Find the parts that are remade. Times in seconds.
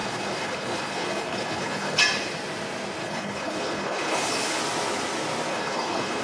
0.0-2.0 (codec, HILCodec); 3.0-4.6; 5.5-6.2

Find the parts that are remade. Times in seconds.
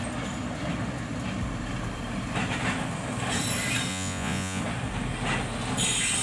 3.9-4.6 (vocoder, Vocos)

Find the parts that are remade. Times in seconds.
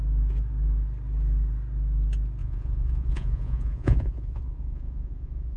2.4-5.6 (vocoder, Vocos)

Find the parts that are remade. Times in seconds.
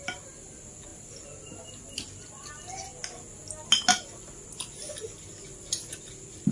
none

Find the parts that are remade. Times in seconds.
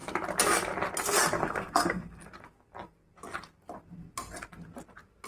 1.4-2.3 (codec, SNAC)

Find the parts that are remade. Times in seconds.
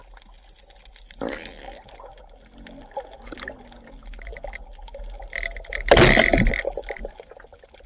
none